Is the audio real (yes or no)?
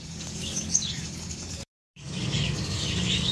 no